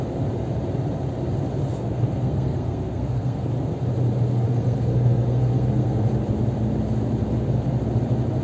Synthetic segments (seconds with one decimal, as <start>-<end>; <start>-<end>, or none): 1.7-3.5; 4.3-6.1

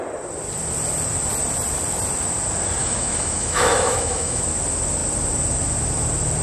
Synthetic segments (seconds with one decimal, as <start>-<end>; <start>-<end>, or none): 2.8-4.4

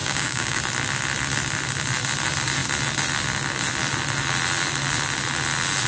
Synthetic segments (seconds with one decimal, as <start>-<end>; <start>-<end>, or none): 0.0-0.6

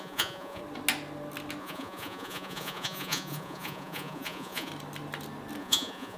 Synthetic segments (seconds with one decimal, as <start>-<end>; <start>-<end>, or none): 0.0-0.6; 1.6-4.7; 5.6-6.2